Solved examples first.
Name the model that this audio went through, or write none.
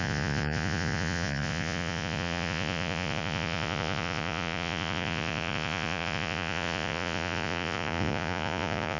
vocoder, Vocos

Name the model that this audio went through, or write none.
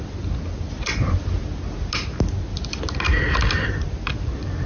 none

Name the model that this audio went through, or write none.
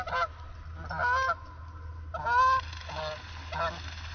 none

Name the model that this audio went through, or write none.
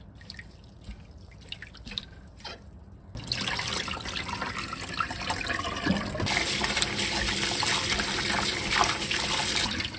none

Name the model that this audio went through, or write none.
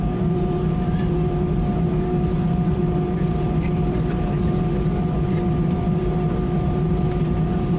vocoder, BigVGAN v2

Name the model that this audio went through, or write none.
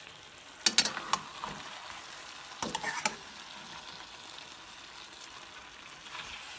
none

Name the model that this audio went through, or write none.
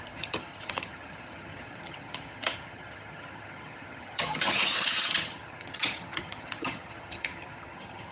vocoder, HiFi-GAN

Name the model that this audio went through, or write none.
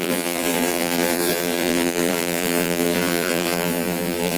vocoder, BigVGAN v2